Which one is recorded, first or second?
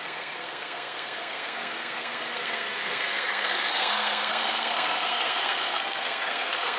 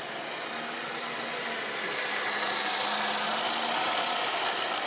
second